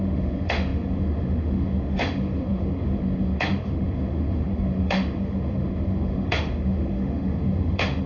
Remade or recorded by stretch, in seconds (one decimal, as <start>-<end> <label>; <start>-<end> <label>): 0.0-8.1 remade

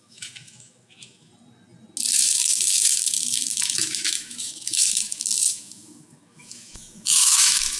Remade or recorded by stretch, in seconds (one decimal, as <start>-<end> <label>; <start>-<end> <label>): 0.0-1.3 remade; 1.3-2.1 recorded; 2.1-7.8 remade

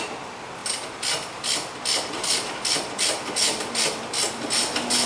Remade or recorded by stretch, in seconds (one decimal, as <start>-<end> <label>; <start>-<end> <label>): 0.0-5.1 recorded